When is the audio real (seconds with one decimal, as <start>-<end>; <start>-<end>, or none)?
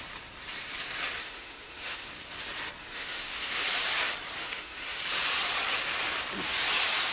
0.0-1.2; 2.1-2.8; 3.6-4.4; 5.0-7.1